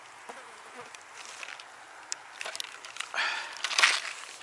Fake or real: real